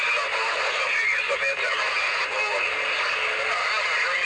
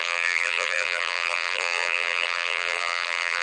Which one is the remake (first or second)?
second